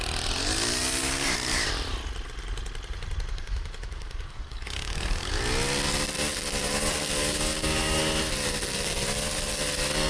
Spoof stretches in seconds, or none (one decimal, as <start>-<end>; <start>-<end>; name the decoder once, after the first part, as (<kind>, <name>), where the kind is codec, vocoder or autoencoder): 1.0-1.7 (codec, DAC); 3.3-5.4; 7.1-8.0